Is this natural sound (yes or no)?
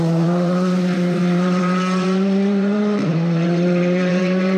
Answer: no